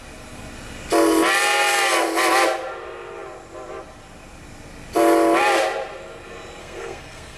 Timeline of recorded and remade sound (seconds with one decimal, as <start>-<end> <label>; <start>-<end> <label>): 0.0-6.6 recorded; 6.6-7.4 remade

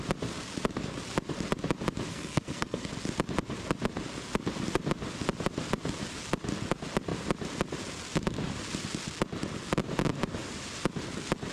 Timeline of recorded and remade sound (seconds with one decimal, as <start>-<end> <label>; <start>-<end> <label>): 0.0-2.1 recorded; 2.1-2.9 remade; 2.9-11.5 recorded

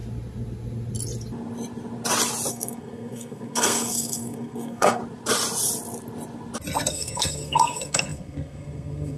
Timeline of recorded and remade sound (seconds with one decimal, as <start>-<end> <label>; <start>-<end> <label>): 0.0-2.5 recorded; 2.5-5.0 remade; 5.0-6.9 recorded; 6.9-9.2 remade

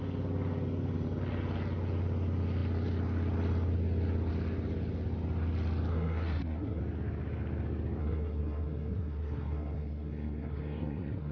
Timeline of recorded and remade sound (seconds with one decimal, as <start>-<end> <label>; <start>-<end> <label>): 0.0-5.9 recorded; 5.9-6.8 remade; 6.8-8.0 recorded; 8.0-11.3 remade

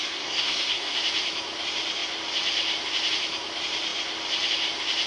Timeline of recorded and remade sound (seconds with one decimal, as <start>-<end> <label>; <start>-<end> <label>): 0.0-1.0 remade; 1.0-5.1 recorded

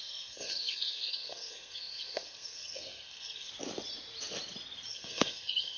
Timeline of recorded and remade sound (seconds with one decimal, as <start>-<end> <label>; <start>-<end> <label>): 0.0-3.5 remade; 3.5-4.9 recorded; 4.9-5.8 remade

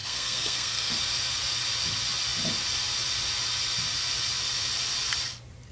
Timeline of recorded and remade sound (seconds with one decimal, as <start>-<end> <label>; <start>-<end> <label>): 0.0-1.0 remade; 1.0-5.7 recorded

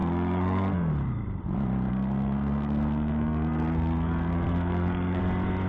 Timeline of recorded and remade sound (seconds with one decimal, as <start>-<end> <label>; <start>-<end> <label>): 0.0-0.9 remade; 0.9-1.9 recorded; 1.9-5.2 remade; 5.2-5.7 recorded